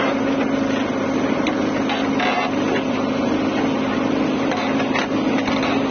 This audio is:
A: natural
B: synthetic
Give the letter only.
A